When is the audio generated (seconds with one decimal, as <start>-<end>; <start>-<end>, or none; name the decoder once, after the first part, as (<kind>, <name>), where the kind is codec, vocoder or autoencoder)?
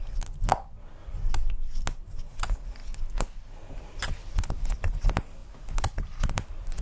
0.5-1.1 (vocoder, BigVGAN v2); 5.4-6.8